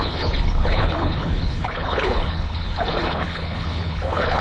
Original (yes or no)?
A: no